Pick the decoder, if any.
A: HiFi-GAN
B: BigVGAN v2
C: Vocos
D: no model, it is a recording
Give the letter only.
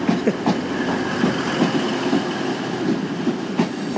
D